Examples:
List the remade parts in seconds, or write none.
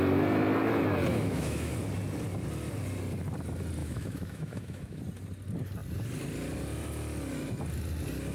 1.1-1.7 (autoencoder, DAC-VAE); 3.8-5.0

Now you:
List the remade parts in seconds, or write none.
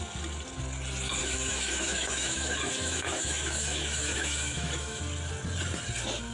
1.2-5.0 (autoencoder, DAC-VAE)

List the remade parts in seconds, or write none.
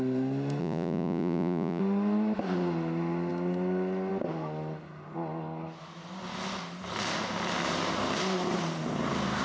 0.6-1.8 (vocoder, Vocos)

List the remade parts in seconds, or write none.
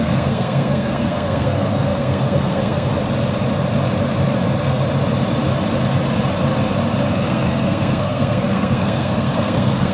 0.0-2.9 (codec, SNAC); 7.1-9.9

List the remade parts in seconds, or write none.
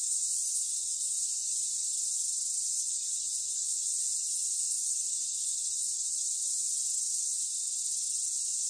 0.0-1.9 (vocoder, Vocos); 2.6-6.4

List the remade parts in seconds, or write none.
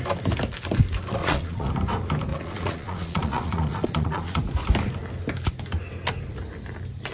1.2-1.7 (vocoder, Vocos); 2.3-4.4